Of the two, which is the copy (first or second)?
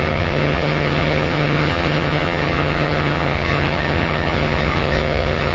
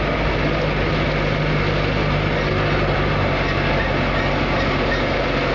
first